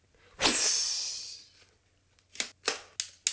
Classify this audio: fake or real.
real